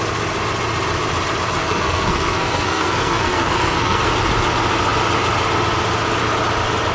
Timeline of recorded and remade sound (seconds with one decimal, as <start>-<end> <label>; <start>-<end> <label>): 0.0-1.6 recorded; 1.6-4.1 remade; 4.1-6.9 recorded

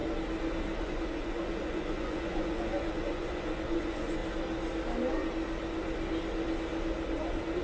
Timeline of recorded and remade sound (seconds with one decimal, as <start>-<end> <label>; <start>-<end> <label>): 0.0-0.8 recorded; 0.8-4.2 remade; 4.2-7.6 recorded